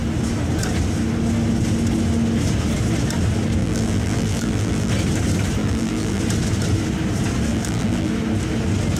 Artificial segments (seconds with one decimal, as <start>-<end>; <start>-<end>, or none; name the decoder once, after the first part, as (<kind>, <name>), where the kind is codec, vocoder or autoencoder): 3.6-4.9 (vocoder, BigVGAN v2); 5.6-6.2; 7.5-8.1

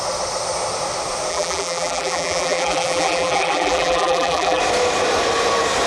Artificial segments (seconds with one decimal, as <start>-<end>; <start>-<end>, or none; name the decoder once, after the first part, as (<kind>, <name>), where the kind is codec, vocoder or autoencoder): 1.3-4.6 (vocoder, BigVGAN v2)

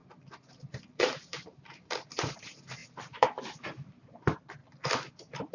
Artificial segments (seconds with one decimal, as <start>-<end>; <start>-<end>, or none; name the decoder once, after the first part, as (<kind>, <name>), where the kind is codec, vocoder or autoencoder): 0.8-4.6 (vocoder, BigVGAN v2)

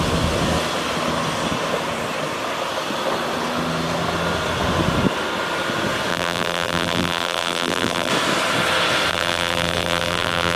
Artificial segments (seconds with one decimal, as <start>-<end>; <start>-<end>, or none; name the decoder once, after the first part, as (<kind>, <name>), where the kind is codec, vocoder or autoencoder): 6.1-8.1 (vocoder, BigVGAN v2); 9.1-10.6

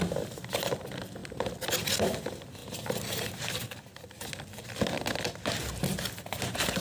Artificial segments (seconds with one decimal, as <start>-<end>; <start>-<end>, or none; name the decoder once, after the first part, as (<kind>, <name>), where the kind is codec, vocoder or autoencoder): 0.0-1.2 (vocoder, BigVGAN v2); 2.2-2.6; 6.1-6.8

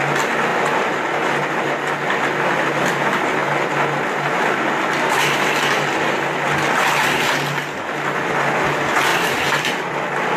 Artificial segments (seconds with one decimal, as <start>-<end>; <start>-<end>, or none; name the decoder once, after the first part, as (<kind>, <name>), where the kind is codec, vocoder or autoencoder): 0.5-1.6 (vocoder, BigVGAN v2); 9.1-9.9

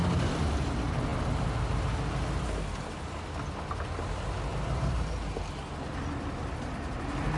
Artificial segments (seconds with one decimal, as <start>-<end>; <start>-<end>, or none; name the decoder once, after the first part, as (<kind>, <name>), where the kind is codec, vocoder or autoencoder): 4.5-5.1 (vocoder, BigVGAN v2)

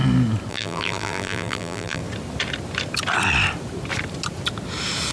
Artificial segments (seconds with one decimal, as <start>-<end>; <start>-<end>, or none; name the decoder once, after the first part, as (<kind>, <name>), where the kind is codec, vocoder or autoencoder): 0.5-2.0 (vocoder, BigVGAN v2)